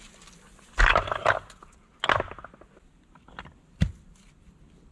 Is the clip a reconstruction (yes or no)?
no